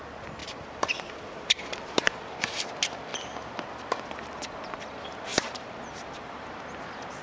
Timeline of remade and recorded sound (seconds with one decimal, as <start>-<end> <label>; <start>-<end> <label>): 0.0-0.4 recorded; 0.4-2.7 remade; 2.7-5.3 recorded; 5.3-6.6 remade; 6.6-7.2 recorded